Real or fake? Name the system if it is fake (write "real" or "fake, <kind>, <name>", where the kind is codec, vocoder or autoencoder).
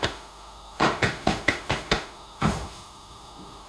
fake, autoencoder, DAC-VAE